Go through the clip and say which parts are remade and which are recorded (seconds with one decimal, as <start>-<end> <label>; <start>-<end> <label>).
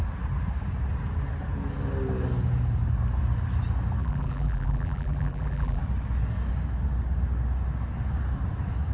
0.0-4.0 recorded; 4.0-5.8 remade; 5.8-8.9 recorded